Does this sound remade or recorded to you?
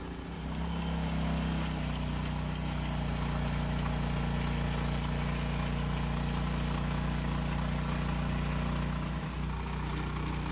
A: recorded